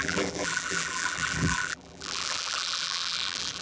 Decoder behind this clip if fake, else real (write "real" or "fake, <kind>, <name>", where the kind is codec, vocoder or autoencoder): fake, vocoder, BigVGAN v2